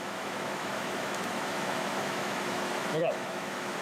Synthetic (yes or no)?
yes